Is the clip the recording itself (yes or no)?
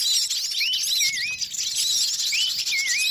yes